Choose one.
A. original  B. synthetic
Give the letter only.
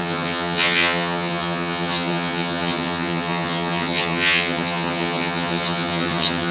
B